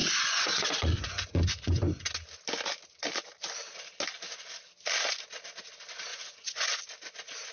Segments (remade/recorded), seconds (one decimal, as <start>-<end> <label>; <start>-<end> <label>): 0.0-1.8 remade; 1.8-6.1 recorded; 6.1-6.8 remade; 6.8-7.5 recorded